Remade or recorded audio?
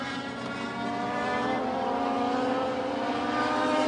recorded